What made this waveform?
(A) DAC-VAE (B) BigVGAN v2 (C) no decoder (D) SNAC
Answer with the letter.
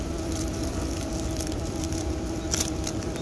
C